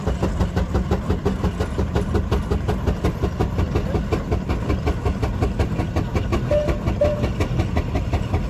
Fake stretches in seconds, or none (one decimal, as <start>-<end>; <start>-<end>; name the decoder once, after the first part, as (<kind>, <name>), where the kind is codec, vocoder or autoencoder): none